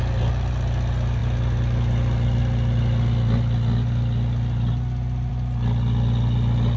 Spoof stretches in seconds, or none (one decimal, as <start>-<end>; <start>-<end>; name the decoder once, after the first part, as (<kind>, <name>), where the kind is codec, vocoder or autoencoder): none